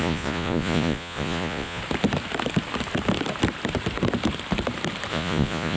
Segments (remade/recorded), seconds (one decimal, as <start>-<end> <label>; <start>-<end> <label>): 0.0-1.8 remade; 1.8-5.1 recorded; 5.1-5.8 remade

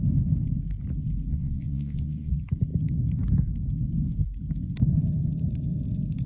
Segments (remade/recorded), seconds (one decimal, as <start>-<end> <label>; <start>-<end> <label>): 0.0-1.3 recorded; 1.3-2.3 remade; 2.3-6.3 recorded